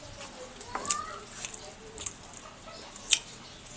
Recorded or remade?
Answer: recorded